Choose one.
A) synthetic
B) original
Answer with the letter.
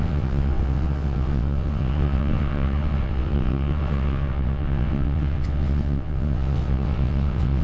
A